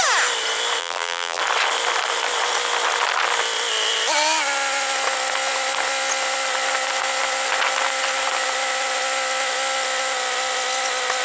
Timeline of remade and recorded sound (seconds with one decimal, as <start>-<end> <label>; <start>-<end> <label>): 0.0-0.8 recorded; 0.8-1.4 remade; 1.4-11.2 recorded

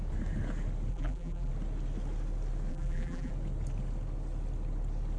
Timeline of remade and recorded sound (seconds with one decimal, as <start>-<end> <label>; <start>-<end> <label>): 0.0-0.9 recorded; 0.9-1.5 remade; 1.5-2.7 recorded; 2.7-3.3 remade; 3.3-5.2 recorded

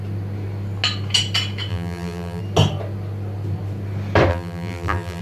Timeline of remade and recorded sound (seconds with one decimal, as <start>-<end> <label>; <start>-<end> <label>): 0.0-1.7 recorded; 1.7-2.4 remade; 2.4-4.3 recorded; 4.3-5.2 remade

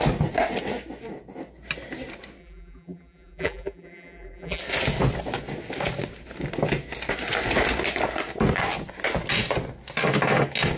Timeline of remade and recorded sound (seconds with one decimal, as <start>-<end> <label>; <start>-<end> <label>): 0.0-2.4 recorded; 2.4-4.6 remade; 4.6-10.8 recorded

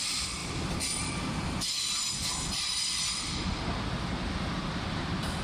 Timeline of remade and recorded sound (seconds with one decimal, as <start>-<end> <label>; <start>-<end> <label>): 0.0-0.4 recorded; 0.4-3.6 remade; 3.6-5.4 recorded